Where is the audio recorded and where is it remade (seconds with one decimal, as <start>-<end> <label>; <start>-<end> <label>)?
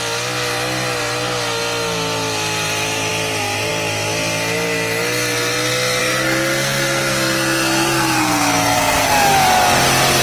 0.0-6.0 recorded; 6.0-9.1 remade; 9.1-10.2 recorded